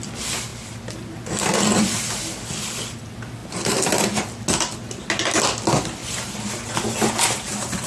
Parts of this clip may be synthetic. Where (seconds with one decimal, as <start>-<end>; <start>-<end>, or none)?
3.4-4.0; 6.0-6.6